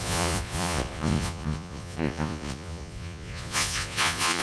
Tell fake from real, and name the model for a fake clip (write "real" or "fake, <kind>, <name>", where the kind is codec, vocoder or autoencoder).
fake, vocoder, Vocos